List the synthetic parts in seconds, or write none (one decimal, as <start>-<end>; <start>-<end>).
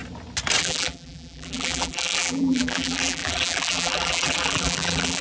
0.6-5.2